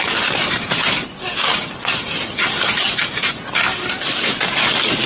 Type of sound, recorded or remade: recorded